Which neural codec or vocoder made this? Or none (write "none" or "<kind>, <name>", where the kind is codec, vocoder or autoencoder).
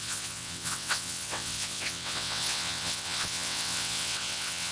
vocoder, WaveNeXt